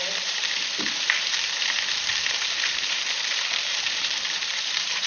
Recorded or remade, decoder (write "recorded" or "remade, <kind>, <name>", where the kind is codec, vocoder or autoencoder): remade, vocoder, BigVGAN v2